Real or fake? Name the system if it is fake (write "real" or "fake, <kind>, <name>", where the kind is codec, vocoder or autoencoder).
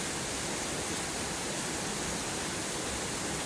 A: real